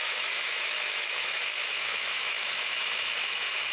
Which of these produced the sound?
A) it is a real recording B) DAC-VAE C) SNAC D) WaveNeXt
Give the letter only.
B